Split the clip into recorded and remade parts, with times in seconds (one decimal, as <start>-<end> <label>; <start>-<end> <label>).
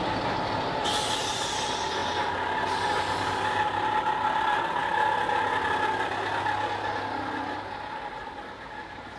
0.0-9.2 recorded